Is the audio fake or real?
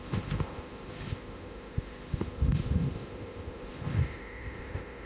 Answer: fake